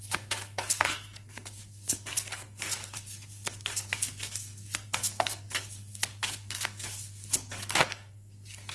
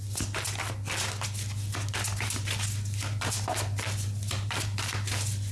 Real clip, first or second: second